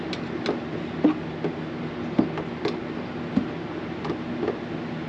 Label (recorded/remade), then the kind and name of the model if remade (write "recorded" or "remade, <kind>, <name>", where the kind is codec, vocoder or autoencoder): recorded